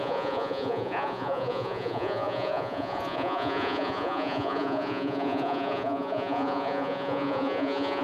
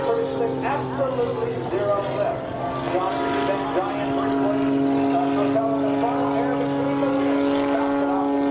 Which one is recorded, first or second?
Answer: second